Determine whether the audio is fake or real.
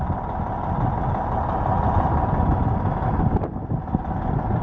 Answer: real